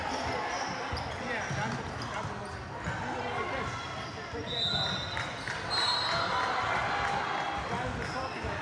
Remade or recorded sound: recorded